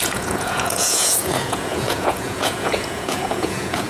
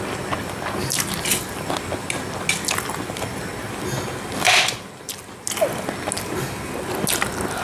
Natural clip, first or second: second